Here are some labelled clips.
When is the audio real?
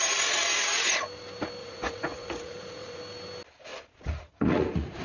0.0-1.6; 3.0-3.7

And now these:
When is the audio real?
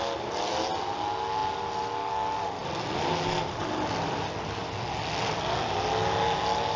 0.0-6.8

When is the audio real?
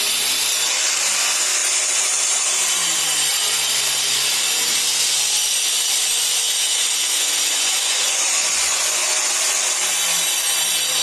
0.0-6.1; 9.4-11.0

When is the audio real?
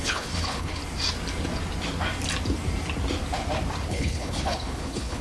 0.8-3.9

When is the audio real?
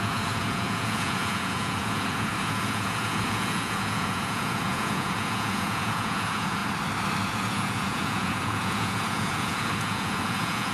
6.6-7.2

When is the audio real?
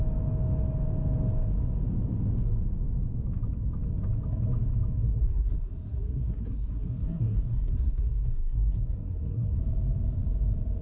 0.0-5.1; 9.6-10.8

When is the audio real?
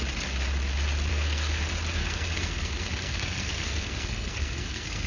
0.0-1.1; 1.6-2.0